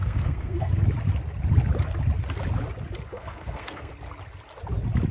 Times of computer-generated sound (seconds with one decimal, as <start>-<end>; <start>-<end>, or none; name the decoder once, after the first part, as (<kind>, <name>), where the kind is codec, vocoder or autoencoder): 0.0-0.7 (codec, SNAC); 3.1-3.9

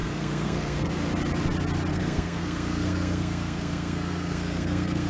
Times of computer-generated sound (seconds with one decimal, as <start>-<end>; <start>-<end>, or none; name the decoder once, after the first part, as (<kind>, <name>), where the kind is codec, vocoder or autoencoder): 0.0-0.9 (codec, SNAC); 1.9-5.1

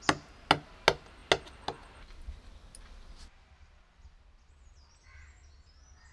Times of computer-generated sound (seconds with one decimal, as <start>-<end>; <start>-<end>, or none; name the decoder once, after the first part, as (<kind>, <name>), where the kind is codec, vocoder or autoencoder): none

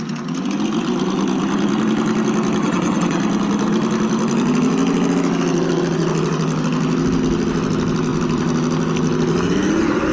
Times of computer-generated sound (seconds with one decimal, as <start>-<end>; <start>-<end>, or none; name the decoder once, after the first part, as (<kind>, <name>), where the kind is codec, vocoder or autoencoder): 2.6-3.2 (vocoder, Vocos)

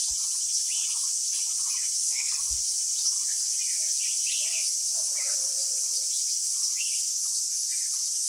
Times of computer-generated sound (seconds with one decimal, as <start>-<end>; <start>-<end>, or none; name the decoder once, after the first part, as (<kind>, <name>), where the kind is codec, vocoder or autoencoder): 2.0-2.6 (codec, SNAC)

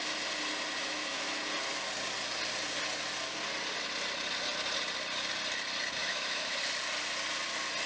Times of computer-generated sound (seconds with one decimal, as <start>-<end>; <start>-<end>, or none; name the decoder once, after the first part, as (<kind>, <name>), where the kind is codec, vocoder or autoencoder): 0.8-1.4 (autoencoder, DAC-VAE); 6.0-6.6

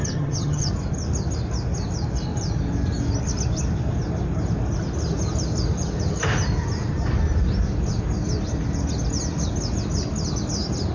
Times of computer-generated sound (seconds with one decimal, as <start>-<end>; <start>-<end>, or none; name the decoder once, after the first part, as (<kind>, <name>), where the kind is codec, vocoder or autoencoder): 0.0-0.7 (vocoder, HiFi-GAN)